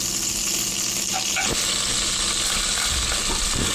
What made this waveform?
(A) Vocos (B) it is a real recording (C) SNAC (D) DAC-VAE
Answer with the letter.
B